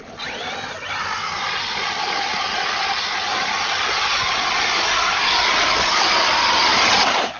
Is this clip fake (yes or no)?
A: no